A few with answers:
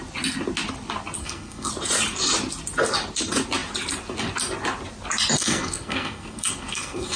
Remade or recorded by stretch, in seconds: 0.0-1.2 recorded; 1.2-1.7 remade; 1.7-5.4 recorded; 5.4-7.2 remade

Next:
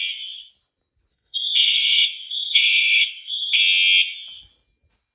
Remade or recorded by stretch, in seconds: 0.0-1.1 recorded; 1.1-3.6 remade; 3.6-5.1 recorded

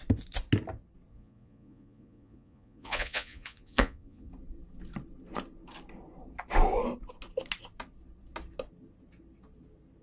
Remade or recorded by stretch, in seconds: 0.0-1.1 recorded; 1.1-4.3 remade; 4.3-10.0 recorded

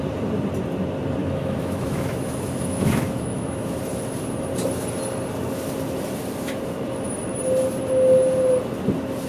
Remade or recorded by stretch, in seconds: 0.0-1.2 recorded; 1.2-3.8 remade; 3.8-9.3 recorded